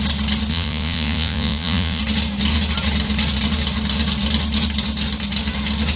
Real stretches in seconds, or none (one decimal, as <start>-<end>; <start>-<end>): 0.0-0.5; 2.0-6.0